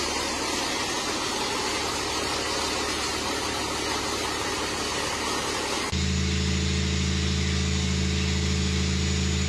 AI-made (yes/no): no